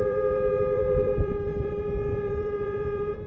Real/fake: fake